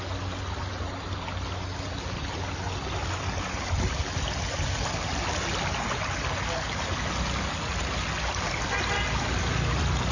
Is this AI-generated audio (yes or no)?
no